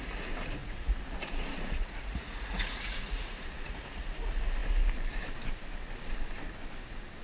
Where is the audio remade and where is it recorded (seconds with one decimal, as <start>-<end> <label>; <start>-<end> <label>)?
0.0-0.6 recorded; 0.6-4.0 remade; 4.0-7.2 recorded